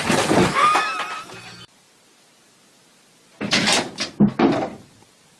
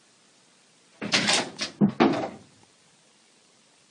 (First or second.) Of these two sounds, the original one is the first